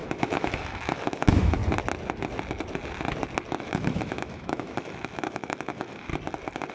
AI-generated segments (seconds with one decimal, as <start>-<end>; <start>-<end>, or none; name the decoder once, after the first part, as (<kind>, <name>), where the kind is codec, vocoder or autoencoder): 0.0-1.6 (autoencoder, DAC-VAE); 3.6-6.1